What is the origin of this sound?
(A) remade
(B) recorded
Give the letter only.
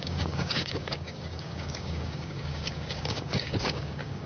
A